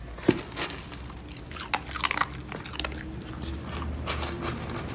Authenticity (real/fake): real